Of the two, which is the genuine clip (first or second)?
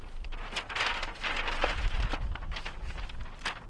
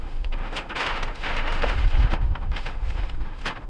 first